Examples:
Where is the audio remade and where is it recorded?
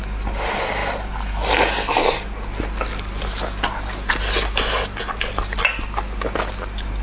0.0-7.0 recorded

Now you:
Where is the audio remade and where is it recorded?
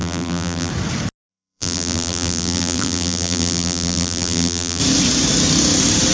0.0-0.7 remade; 0.7-1.3 recorded; 1.3-4.8 remade; 4.8-6.1 recorded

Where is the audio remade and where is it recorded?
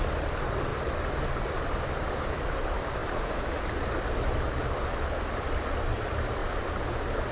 0.0-0.7 remade; 0.7-2.3 recorded; 2.3-6.4 remade; 6.4-7.3 recorded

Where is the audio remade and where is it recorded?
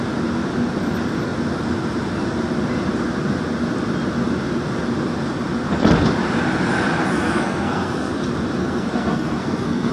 0.0-7.0 recorded; 7.0-8.1 remade; 8.1-8.6 recorded; 8.6-9.9 remade